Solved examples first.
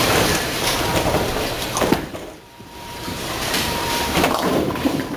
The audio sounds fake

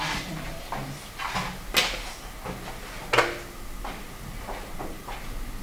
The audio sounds real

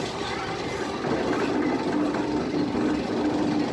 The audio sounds real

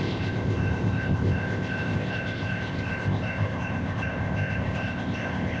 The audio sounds fake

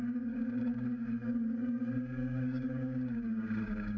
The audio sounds fake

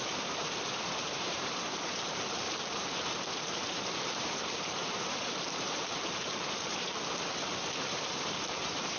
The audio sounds fake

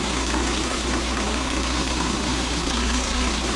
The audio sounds fake